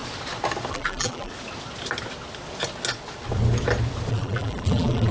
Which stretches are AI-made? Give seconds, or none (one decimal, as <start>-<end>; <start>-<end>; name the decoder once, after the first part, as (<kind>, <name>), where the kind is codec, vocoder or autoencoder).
0.7-1.3 (vocoder, BigVGAN v2); 4.1-5.1